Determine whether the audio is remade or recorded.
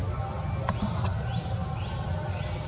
recorded